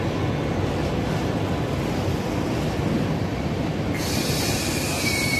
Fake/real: real